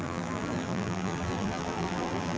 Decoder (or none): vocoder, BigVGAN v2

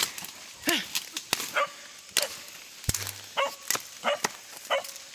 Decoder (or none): none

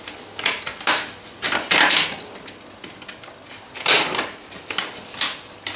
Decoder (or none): none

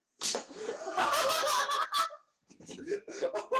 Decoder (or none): codec, SNAC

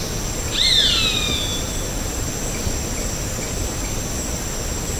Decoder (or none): none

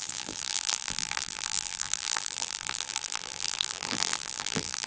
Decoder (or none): vocoder, BigVGAN v2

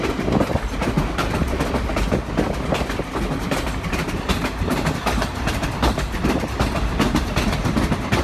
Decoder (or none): none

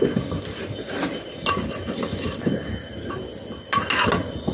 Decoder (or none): none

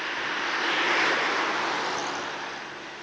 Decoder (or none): none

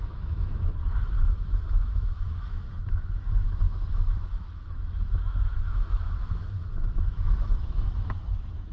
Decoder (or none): autoencoder, DAC-VAE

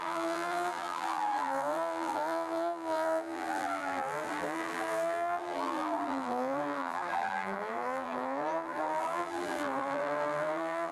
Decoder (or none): vocoder, BigVGAN v2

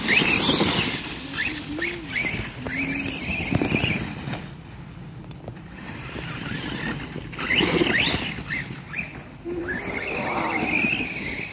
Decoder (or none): none